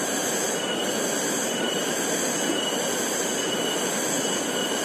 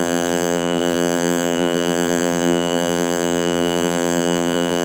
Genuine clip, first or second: first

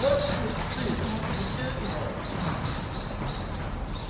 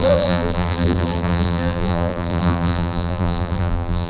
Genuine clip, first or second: first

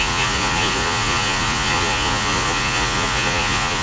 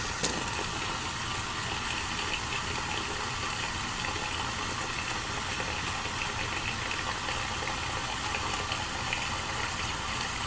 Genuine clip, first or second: second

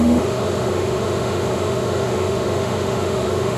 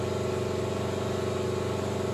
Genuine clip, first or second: second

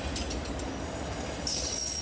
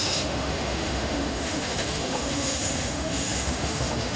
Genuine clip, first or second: first